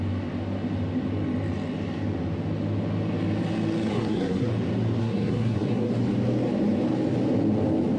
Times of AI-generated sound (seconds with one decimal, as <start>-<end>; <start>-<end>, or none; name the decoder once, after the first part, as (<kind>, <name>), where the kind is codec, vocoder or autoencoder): 3.9-4.5 (codec, SNAC); 5.0-5.9